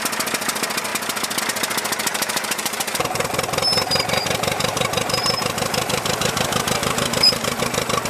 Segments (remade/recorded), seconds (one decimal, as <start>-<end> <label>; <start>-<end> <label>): 0.0-2.1 recorded; 2.1-3.3 remade; 3.3-3.7 recorded; 3.7-7.6 remade; 7.6-8.1 recorded